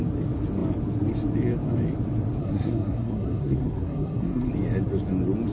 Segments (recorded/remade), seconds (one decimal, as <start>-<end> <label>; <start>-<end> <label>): 0.0-2.4 recorded; 2.4-4.5 remade; 4.5-5.5 recorded